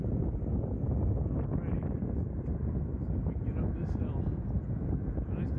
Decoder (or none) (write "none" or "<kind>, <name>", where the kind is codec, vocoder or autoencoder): none